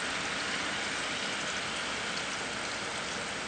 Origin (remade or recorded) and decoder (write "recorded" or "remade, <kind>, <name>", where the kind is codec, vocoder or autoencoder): recorded